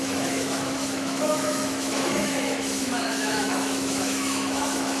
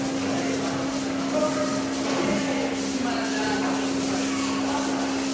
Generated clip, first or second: first